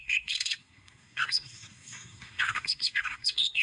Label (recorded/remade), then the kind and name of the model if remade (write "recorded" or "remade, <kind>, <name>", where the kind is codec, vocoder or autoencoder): remade, codec, SNAC